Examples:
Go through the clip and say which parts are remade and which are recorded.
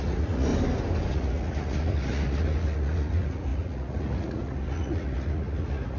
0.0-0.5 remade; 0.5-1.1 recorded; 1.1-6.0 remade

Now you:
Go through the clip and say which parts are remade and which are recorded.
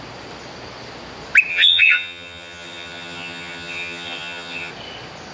0.0-1.5 recorded; 1.5-4.7 remade; 4.7-5.3 recorded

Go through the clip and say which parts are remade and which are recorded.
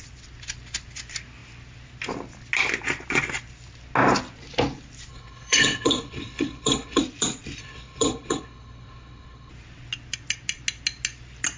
0.0-5.1 recorded; 5.1-7.0 remade; 7.0-7.6 recorded; 7.6-9.5 remade; 9.5-11.6 recorded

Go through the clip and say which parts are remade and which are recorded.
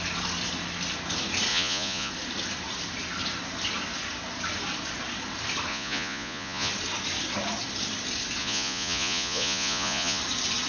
0.0-1.5 recorded; 1.5-2.1 remade; 2.1-5.7 recorded; 5.7-6.7 remade; 6.7-8.4 recorded; 8.4-10.2 remade; 10.2-10.7 recorded